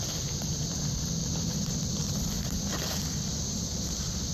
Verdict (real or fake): real